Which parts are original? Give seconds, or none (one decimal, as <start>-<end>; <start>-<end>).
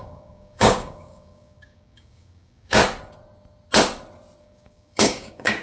2.8-4.4